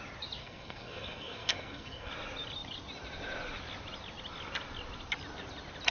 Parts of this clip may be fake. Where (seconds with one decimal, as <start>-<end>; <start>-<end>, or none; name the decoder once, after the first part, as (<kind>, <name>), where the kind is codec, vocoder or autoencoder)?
0.4-2.1 (codec, SNAC)